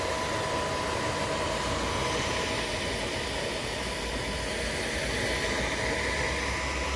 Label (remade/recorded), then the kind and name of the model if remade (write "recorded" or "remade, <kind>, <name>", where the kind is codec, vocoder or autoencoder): recorded